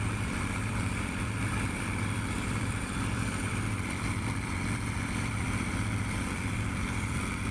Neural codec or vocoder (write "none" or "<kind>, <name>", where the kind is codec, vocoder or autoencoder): vocoder, BigVGAN v2